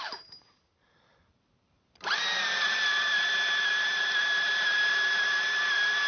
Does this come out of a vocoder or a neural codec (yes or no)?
yes